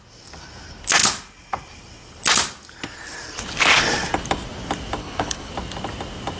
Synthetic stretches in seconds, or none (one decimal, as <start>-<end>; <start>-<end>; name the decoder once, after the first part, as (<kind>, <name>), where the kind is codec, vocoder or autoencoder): 5.0-5.5 (codec, HILCodec)